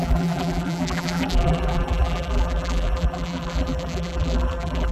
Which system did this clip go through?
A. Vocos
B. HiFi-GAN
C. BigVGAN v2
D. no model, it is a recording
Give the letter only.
C